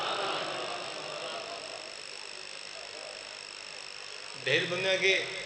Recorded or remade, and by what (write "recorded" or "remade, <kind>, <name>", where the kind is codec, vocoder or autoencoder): recorded